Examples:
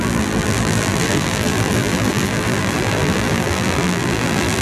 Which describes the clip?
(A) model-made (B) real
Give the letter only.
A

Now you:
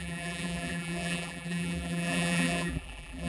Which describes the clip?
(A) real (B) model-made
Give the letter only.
B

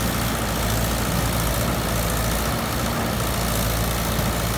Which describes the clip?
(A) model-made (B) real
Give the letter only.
B